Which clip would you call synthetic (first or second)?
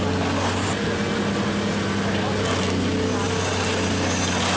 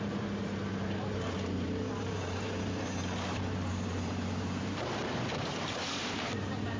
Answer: second